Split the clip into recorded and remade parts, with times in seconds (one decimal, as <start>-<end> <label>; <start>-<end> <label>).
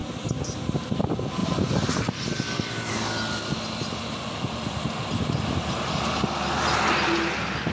0.0-7.7 recorded